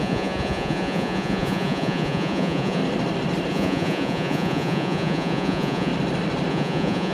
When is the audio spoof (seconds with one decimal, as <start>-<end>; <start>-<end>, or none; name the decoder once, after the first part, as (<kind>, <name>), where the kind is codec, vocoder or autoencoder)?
0.0-2.8 (vocoder, Vocos); 3.5-5.9; 6.5-7.1

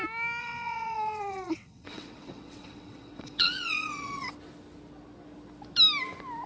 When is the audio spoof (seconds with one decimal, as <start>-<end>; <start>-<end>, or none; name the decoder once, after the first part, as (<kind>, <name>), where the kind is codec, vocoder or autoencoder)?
0.4-4.3 (vocoder, WaveNeXt)